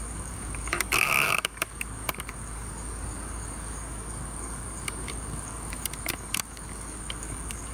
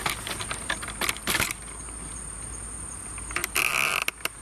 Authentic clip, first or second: second